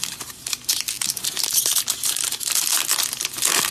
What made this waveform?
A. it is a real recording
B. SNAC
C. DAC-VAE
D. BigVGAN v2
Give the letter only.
A